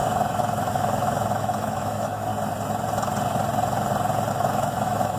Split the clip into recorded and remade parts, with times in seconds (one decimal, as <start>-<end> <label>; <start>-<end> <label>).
0.0-2.3 remade; 2.3-4.3 recorded; 4.3-5.2 remade